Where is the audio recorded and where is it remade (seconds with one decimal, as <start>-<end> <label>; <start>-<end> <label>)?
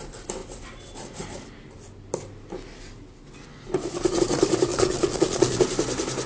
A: 0.0-4.7 recorded; 4.7-5.6 remade; 5.6-6.3 recorded